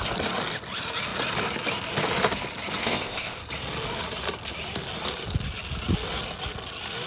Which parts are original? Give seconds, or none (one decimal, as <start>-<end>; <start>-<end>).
0.0-2.8; 3.4-7.1